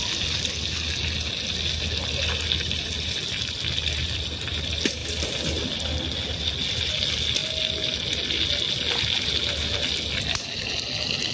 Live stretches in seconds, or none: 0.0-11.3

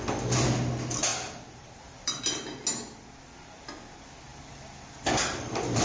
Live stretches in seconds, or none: 0.0-1.1; 2.2-4.3

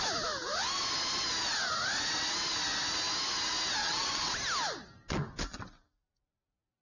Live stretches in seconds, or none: 0.0-3.8; 4.3-6.8

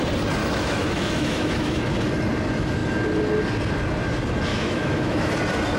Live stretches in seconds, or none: 0.0-0.4; 1.8-4.5; 5.3-5.8

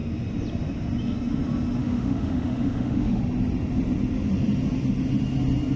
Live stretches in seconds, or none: 0.0-1.8; 3.2-5.8

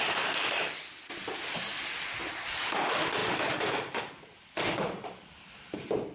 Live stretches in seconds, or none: 0.0-6.1

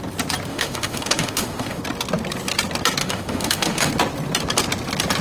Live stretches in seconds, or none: 0.0-0.5; 1.8-3.0; 3.9-5.2

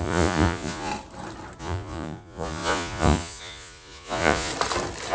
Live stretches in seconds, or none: 0.9-1.6; 4.5-5.1